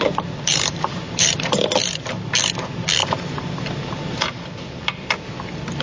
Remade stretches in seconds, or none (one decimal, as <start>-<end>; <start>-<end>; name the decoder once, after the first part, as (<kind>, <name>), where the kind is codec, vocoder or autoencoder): 0.5-1.6 (vocoder, BigVGAN v2)